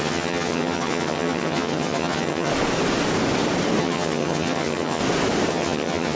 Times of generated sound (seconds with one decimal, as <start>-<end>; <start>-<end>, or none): 0.0-2.5; 3.8-5.0; 5.5-6.2